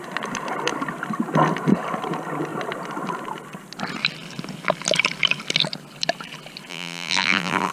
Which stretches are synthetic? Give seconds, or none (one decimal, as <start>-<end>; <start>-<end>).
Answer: 6.7-7.7